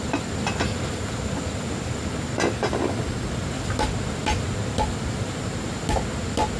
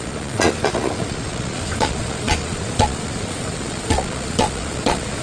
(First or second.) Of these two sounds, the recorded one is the first